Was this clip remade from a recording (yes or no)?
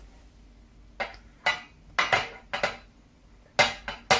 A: no